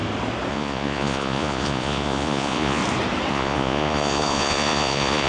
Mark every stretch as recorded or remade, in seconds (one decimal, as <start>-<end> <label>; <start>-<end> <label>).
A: 0.0-0.5 recorded; 0.5-2.8 remade; 2.8-3.3 recorded; 3.3-5.3 remade